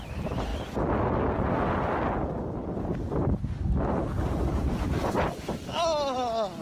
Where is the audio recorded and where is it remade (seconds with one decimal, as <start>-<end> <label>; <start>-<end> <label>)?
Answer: 0.0-4.6 recorded; 4.6-5.1 remade; 5.1-6.6 recorded